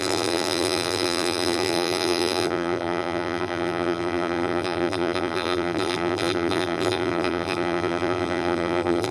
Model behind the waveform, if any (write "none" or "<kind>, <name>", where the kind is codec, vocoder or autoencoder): vocoder, BigVGAN v2